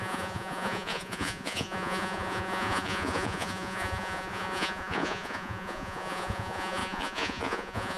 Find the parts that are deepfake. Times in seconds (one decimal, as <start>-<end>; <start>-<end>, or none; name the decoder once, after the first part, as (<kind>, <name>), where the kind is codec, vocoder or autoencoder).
0.0-8.0 (vocoder, Vocos)